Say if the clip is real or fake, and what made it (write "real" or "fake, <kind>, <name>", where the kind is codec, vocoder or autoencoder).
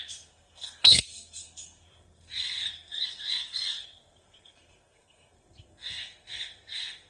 fake, codec, SNAC